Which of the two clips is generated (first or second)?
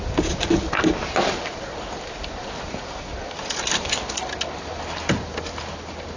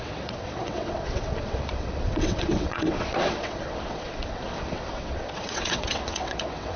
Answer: second